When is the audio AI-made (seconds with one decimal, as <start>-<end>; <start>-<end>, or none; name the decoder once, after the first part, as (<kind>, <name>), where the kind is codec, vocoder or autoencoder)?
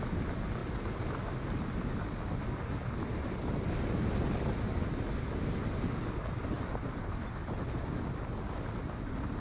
none